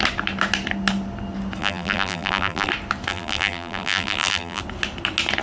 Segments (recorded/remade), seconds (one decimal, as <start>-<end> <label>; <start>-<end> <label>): 0.0-1.6 recorded; 1.6-2.7 remade; 2.7-3.1 recorded; 3.1-4.6 remade; 4.6-5.4 recorded